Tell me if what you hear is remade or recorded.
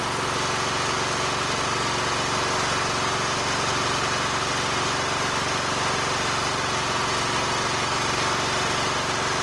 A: recorded